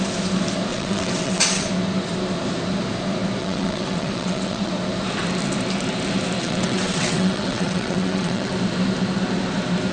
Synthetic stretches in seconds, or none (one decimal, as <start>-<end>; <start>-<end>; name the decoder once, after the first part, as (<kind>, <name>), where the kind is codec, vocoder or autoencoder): 0.7-1.7 (vocoder, WaveNeXt); 3.4-4.7; 6.4-8.5